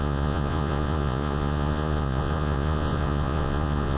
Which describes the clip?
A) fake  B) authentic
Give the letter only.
A